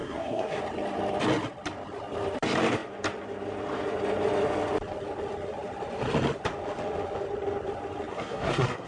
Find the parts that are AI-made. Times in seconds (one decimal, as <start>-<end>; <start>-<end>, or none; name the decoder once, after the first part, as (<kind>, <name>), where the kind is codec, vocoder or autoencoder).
0.0-0.6 (codec, SNAC); 8.1-8.9